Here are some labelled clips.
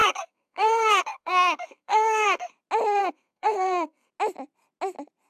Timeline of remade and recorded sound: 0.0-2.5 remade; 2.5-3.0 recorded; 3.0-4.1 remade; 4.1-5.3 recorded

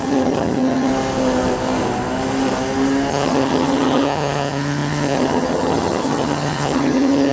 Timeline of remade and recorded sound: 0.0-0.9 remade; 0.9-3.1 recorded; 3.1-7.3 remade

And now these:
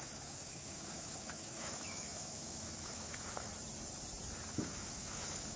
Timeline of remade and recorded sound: 0.0-3.5 remade; 3.5-4.5 recorded; 4.5-5.6 remade